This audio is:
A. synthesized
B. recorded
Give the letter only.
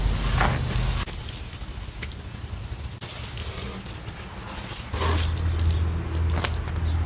B